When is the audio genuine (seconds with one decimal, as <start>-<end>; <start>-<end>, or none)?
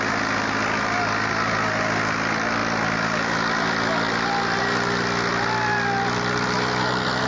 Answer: 0.0-7.3